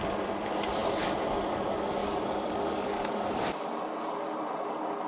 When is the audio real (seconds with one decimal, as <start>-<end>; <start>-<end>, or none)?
0.0-2.0; 3.2-5.1